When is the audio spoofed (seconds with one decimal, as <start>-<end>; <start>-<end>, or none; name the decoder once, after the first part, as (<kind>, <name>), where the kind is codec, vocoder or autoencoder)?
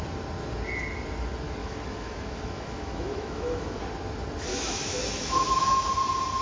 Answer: 1.6-3.8 (autoencoder, DAC-VAE); 4.5-5.9